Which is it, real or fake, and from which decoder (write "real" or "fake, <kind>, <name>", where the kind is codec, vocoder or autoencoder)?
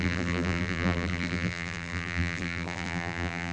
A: fake, vocoder, BigVGAN v2